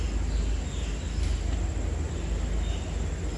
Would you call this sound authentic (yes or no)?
yes